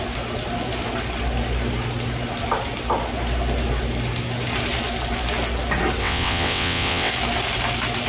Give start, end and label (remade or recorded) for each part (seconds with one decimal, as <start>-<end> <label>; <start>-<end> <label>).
0.0-6.0 recorded; 6.0-7.1 remade; 7.1-8.1 recorded